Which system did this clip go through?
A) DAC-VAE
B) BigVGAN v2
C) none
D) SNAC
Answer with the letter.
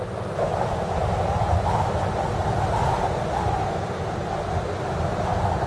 C